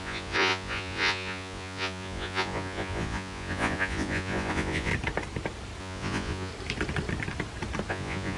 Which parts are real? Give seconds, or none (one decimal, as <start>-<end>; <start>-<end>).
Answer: 4.9-5.8; 6.5-7.9